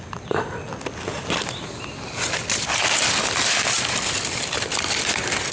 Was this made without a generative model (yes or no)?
yes